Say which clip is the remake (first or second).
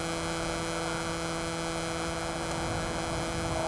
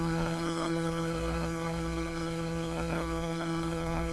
second